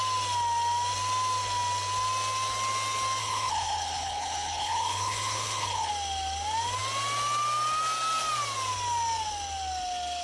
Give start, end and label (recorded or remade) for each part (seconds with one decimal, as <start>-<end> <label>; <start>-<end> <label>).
0.0-3.2 recorded; 3.2-5.9 remade; 5.9-10.2 recorded